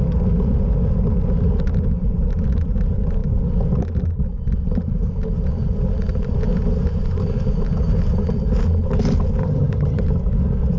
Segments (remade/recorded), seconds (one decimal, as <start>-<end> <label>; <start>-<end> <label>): 0.0-9.4 recorded; 9.4-10.0 remade; 10.0-10.8 recorded